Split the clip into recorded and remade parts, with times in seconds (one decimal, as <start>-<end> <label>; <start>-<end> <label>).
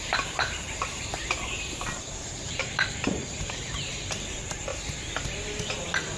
0.0-1.2 remade; 1.2-1.7 recorded; 1.7-4.7 remade; 4.7-6.2 recorded